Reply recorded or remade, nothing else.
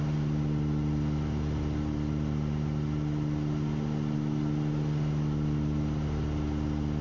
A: recorded